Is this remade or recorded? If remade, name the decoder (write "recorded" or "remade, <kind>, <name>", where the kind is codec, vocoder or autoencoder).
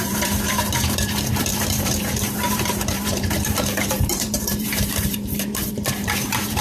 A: remade, vocoder, BigVGAN v2